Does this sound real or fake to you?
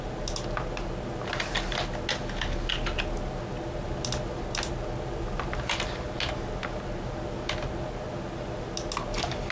real